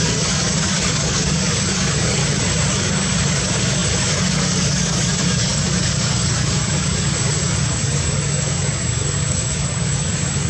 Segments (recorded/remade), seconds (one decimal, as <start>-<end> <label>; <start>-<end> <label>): 0.0-2.2 remade; 2.2-2.7 recorded; 2.7-10.5 remade